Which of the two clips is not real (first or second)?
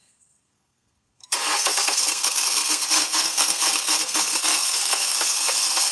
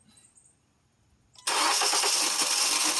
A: first